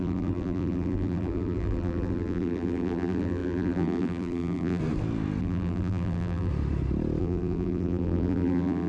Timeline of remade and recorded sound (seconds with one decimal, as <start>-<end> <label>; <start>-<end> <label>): 0.0-4.8 remade; 4.8-5.4 recorded; 5.4-6.5 remade; 6.5-7.2 recorded; 7.2-8.9 remade